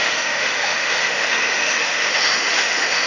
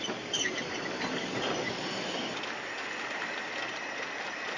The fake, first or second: first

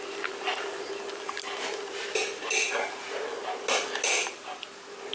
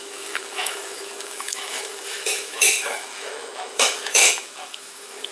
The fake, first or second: second